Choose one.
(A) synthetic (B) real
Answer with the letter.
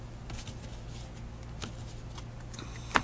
B